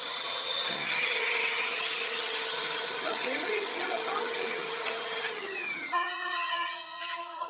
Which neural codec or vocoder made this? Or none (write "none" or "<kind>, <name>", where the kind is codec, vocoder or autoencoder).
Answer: vocoder, HiFi-GAN